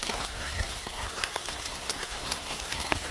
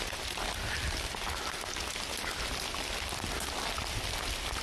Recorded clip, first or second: second